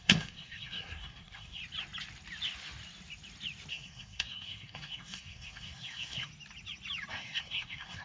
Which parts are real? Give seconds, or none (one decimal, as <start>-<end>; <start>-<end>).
1.6-3.7; 6.3-7.1